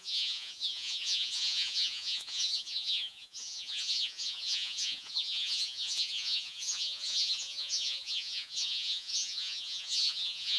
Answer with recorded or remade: remade